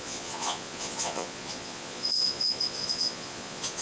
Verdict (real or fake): fake